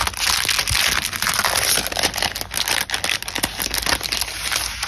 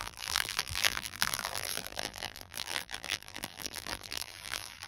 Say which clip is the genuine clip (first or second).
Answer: first